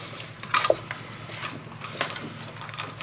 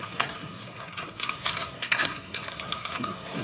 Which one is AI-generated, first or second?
second